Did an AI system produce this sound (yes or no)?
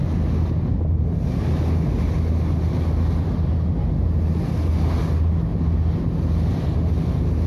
no